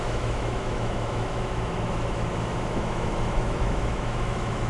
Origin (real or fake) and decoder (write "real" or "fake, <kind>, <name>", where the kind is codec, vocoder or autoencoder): fake, autoencoder, DAC-VAE